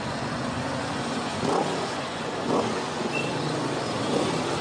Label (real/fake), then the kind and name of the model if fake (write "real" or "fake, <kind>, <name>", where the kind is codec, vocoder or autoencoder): fake, vocoder, Vocos